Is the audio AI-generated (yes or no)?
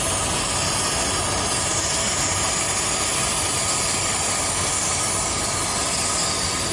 no